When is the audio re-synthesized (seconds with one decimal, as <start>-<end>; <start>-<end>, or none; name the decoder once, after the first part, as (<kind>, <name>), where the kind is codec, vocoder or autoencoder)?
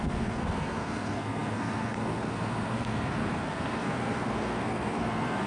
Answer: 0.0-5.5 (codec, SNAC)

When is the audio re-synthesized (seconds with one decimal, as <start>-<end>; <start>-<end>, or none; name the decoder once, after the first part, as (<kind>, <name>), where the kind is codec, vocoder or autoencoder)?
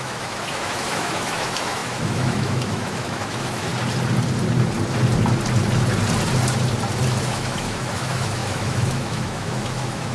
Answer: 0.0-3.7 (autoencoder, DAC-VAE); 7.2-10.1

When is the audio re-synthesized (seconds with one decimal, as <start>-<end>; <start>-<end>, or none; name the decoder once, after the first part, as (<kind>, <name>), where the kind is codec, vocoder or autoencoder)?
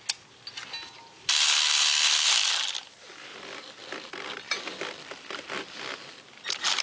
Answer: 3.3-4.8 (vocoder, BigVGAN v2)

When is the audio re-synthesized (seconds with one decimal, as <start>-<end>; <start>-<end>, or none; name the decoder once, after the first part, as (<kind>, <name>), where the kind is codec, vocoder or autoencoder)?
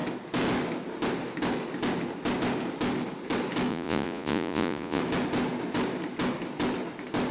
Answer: 3.7-5.0 (vocoder, Vocos)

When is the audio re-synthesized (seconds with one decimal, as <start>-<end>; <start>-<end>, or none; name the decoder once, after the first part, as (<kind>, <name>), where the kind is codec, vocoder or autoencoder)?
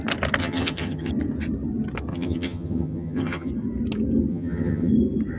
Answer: 0.4-1.1 (vocoder, HiFi-GAN); 2.1-3.5; 4.3-4.9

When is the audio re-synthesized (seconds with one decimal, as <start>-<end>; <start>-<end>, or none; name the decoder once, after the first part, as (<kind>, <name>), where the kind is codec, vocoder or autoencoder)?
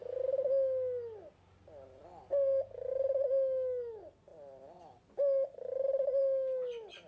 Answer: none